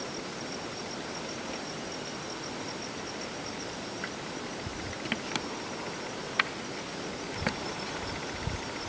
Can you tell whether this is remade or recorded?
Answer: recorded